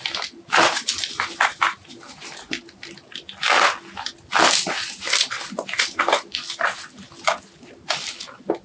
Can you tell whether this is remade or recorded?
recorded